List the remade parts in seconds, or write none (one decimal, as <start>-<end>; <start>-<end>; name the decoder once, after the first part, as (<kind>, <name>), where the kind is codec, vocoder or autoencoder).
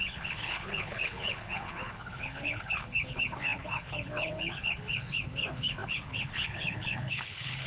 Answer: 0.0-7.7 (codec, HILCodec)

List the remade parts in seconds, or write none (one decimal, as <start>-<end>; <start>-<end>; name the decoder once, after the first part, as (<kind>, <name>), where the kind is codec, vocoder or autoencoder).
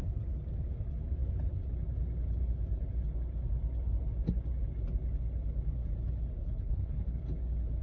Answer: 6.4-7.2 (codec, HILCodec)